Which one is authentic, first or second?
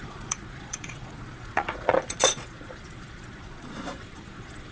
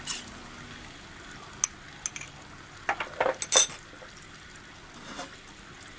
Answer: second